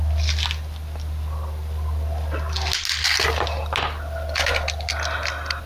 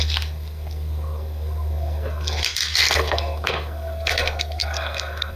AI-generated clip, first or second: second